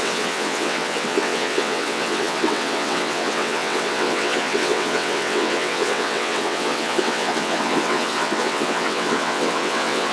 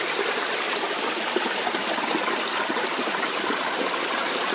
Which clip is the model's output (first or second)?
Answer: first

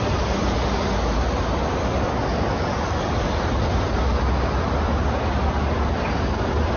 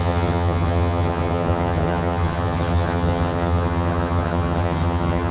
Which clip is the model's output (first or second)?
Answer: second